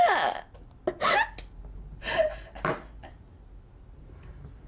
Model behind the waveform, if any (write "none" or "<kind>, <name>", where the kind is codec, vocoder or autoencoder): none